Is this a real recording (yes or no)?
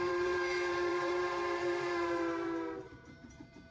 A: no